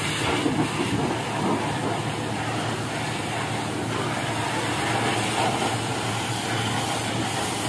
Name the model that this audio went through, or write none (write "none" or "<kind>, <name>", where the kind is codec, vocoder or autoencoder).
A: none